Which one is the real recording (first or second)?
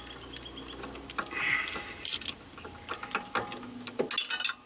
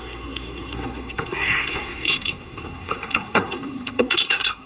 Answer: first